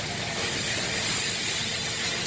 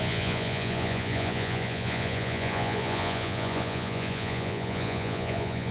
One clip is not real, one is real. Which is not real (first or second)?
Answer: second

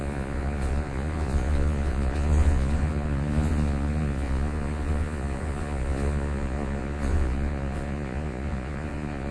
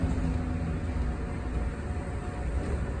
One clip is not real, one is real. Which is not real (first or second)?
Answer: first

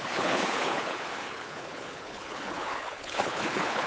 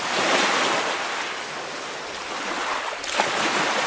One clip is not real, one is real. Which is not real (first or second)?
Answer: first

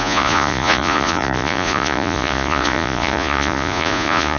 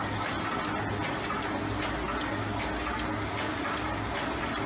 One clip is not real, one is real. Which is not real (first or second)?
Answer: first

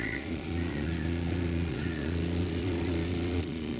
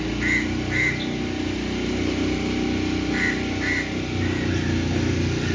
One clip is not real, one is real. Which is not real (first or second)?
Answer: first